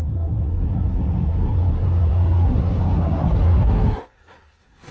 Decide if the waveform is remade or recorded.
remade